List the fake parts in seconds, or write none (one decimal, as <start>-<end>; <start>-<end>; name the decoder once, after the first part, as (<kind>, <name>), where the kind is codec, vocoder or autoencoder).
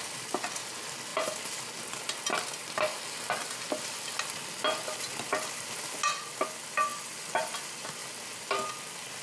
none